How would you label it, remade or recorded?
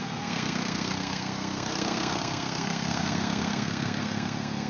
remade